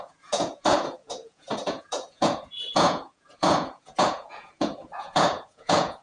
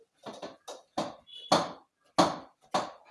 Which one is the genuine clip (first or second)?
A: second